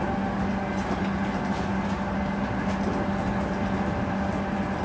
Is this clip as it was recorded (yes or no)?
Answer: yes